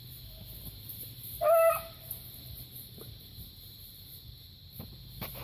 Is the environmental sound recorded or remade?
recorded